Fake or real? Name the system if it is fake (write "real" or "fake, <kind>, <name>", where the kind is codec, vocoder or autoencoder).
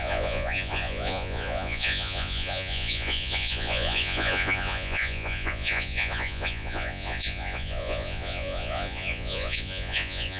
fake, vocoder, Vocos